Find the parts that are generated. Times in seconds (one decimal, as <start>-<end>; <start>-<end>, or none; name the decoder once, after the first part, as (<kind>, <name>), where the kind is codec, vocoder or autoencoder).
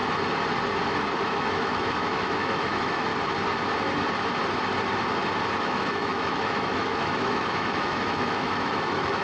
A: 1.2-3.1 (autoencoder, DAC-VAE); 5.6-9.2